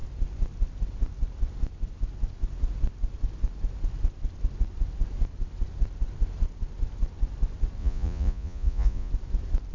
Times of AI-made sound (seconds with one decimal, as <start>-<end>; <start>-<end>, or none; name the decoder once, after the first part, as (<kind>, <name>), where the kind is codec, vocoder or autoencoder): 7.8-9.1 (vocoder, Vocos)